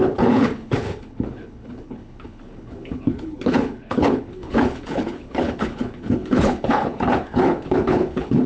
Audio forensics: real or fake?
fake